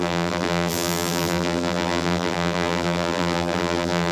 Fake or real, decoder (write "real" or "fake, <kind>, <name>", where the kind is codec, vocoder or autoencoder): fake, vocoder, BigVGAN v2